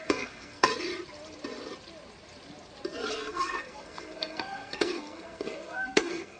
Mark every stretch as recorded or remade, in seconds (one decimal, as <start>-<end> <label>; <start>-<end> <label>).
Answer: 0.0-0.7 remade; 0.7-3.1 recorded; 3.1-6.4 remade